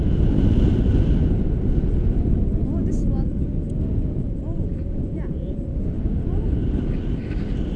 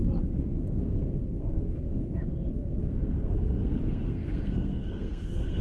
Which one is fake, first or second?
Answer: second